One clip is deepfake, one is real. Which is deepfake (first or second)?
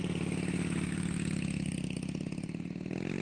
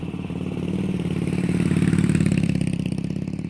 second